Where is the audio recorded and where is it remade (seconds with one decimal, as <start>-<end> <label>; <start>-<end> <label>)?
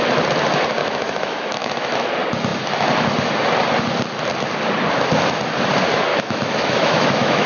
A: 0.0-0.8 recorded; 0.8-2.1 remade; 2.1-6.1 recorded; 6.1-7.5 remade